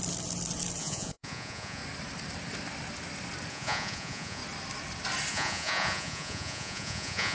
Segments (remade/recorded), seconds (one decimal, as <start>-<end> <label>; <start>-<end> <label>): 0.0-0.8 recorded; 0.8-1.8 remade; 1.8-3.5 recorded; 3.5-4.4 remade; 4.4-5.3 recorded; 5.3-7.3 remade